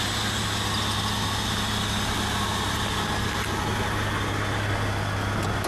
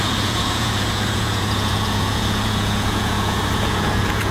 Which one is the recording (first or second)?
first